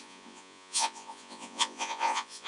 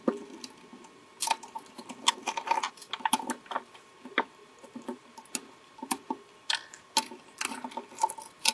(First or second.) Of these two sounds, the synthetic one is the first